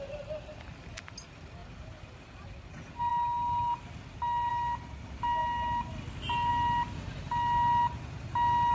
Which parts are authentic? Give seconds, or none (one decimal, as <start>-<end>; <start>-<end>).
0.0-8.7